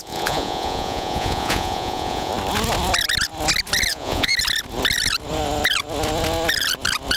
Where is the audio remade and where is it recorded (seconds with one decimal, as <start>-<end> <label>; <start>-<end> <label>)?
0.0-2.3 remade; 2.3-3.9 recorded; 3.9-4.3 remade; 4.3-7.2 recorded